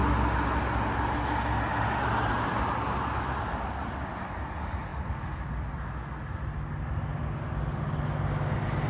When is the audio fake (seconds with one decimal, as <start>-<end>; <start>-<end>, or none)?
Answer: none